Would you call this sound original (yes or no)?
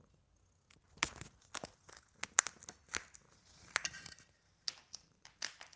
yes